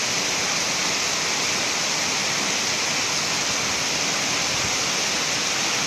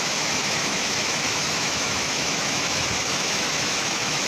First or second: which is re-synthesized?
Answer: second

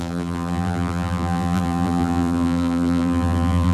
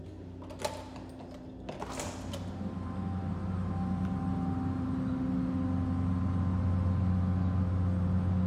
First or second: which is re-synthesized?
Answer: first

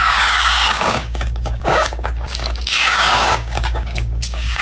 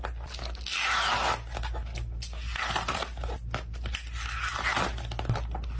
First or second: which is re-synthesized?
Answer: first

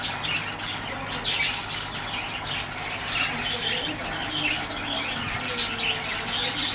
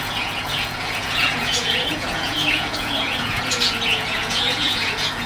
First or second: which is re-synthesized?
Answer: second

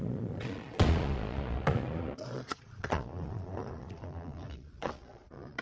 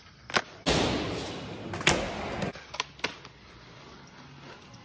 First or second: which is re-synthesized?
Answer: first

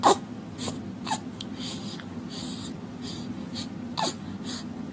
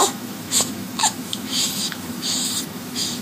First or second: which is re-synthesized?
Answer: second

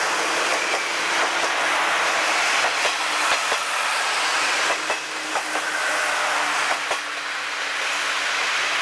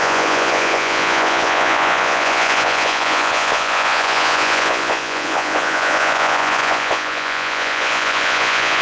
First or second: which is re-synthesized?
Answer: second